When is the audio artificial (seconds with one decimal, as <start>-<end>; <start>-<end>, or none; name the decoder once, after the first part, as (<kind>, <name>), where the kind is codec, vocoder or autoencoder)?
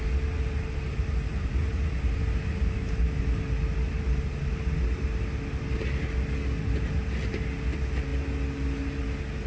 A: none